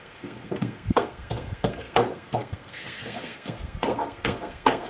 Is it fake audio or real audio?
fake